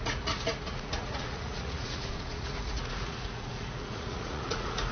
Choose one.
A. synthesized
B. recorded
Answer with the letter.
A